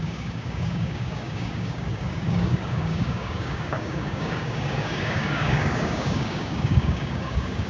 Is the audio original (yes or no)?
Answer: no